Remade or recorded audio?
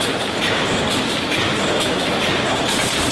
remade